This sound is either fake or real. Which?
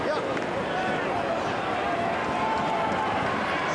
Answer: real